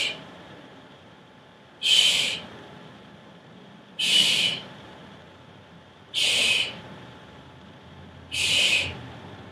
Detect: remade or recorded remade